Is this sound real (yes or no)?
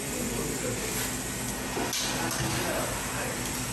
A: yes